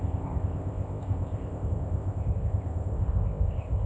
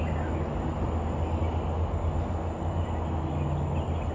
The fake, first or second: first